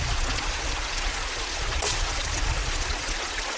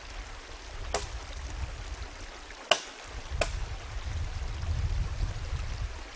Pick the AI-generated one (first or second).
first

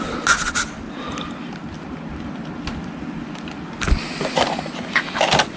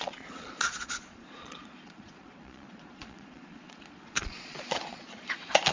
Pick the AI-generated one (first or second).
second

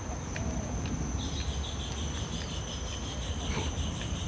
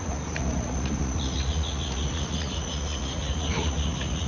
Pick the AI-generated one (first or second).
second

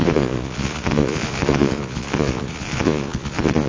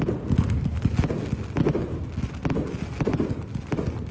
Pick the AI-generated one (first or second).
first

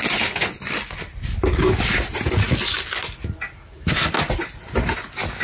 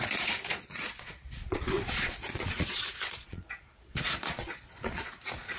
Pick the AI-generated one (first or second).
second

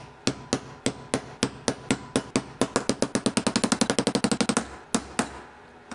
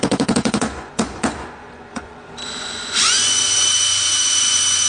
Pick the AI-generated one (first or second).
second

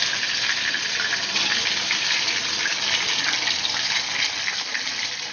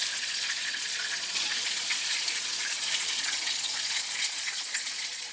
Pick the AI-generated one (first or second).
second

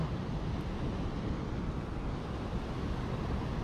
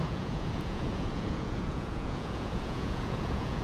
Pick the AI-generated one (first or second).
second